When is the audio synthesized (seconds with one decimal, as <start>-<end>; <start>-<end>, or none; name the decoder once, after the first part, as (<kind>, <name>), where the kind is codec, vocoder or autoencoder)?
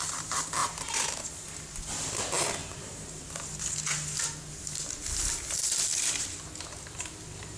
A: 0.6-1.2 (vocoder, BigVGAN v2); 2.6-3.4